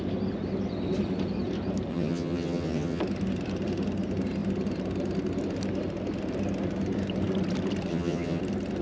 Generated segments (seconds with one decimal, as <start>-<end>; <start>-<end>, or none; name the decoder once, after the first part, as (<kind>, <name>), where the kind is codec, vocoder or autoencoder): 1.9-3.0 (vocoder, HiFi-GAN); 7.9-8.4